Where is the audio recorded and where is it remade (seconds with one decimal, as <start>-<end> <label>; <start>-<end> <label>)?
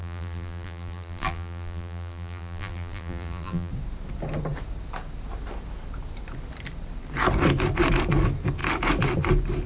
0.0-3.7 remade; 3.7-9.7 recorded